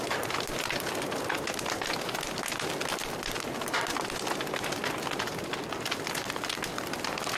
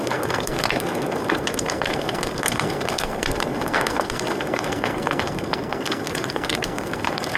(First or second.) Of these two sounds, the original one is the first